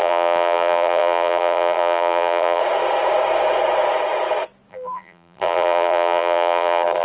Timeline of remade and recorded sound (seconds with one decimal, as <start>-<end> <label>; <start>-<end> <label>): 0.0-2.6 remade; 2.6-4.7 recorded; 4.7-7.0 remade